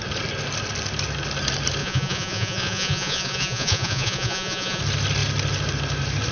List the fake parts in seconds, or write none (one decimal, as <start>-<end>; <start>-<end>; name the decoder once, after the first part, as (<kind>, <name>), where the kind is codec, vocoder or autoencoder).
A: 1.8-4.8 (vocoder, Vocos)